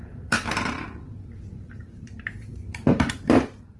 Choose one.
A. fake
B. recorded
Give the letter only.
A